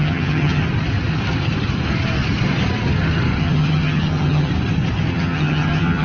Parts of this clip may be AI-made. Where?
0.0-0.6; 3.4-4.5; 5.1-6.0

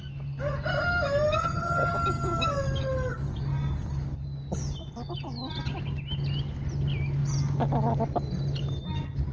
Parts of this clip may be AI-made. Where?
1.4-1.9

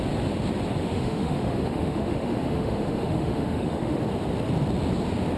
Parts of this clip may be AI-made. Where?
0.8-4.0

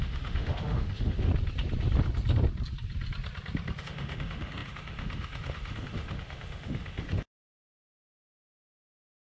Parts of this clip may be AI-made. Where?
0.0-1.3; 3.8-9.4

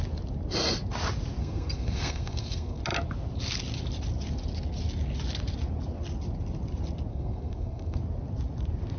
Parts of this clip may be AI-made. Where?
1.4-2.8; 7.1-8.0

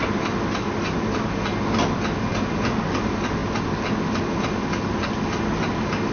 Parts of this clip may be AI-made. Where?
none

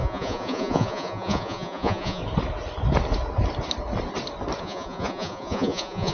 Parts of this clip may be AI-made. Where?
0.0-2.2; 4.6-6.1

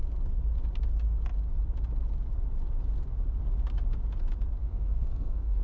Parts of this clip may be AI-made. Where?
4.6-5.6